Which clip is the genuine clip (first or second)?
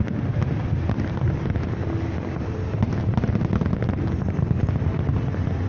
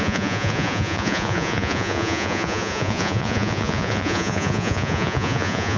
first